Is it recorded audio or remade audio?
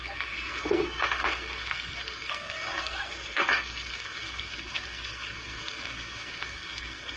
remade